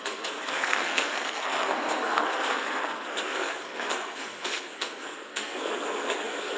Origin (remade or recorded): remade